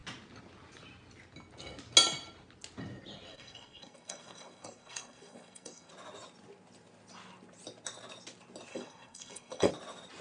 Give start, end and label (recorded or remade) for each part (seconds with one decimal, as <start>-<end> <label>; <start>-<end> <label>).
0.0-3.3 recorded; 3.3-5.9 remade; 5.9-8.7 recorded; 8.7-9.7 remade; 9.7-10.2 recorded